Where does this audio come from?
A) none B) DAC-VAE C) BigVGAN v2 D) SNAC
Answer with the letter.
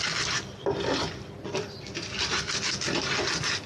A